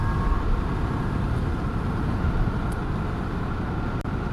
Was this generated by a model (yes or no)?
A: no